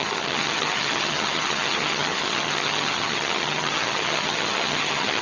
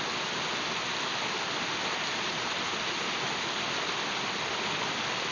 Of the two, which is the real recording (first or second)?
second